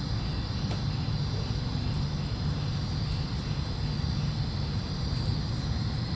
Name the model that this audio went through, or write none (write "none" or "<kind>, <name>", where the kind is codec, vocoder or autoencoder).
none